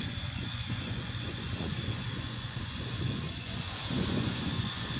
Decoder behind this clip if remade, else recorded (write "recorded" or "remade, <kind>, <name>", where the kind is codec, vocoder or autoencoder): remade, vocoder, Vocos